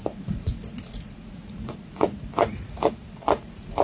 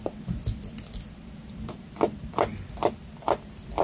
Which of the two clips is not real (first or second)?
first